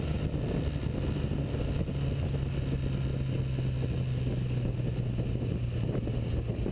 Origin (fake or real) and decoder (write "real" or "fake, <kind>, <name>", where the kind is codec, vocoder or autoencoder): real